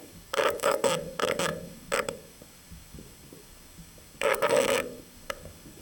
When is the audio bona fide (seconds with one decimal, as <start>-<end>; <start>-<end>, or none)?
none